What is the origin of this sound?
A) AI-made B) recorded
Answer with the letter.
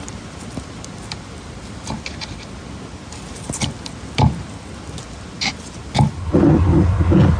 B